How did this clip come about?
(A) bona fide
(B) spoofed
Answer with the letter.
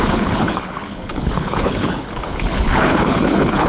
B